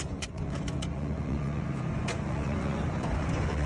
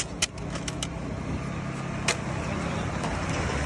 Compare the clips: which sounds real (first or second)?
second